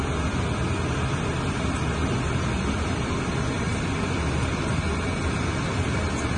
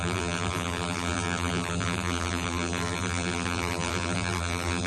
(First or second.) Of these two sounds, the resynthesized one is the second